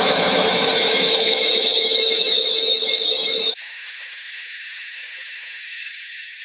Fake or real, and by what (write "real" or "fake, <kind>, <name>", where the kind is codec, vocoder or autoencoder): fake, autoencoder, DAC-VAE